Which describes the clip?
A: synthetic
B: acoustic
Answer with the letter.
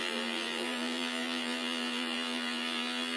A